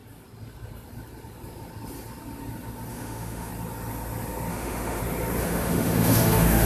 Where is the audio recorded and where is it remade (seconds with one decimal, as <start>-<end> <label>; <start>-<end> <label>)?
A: 0.0-2.9 recorded; 2.9-3.5 remade; 3.5-4.5 recorded; 4.5-5.0 remade; 5.0-5.4 recorded; 5.4-6.7 remade